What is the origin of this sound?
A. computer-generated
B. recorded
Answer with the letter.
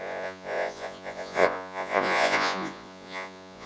A